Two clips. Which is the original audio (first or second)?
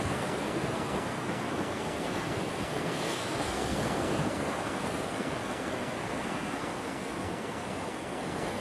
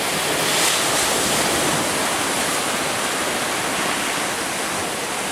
second